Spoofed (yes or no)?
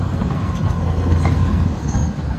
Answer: yes